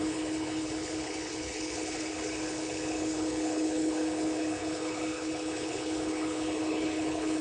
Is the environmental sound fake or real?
fake